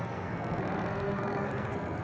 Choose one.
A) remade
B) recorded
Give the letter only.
A